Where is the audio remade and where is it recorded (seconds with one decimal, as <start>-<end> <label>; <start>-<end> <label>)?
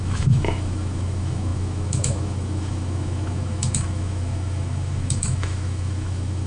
0.0-6.5 remade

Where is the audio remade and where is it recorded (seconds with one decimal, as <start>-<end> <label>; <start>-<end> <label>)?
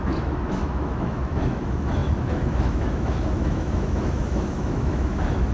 0.0-5.5 remade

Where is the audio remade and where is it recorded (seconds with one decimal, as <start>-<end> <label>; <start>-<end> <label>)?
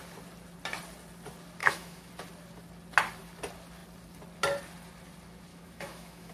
0.0-1.6 recorded; 1.6-2.1 remade; 2.1-5.5 recorded; 5.5-6.3 remade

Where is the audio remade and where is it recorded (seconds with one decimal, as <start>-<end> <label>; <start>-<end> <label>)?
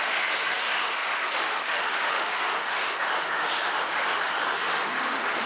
0.0-5.5 remade